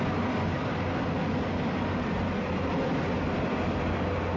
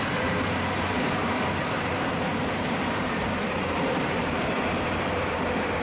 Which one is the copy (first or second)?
second